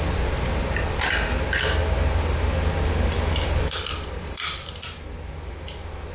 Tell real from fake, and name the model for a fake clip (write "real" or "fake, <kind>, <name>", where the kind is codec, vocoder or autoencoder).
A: real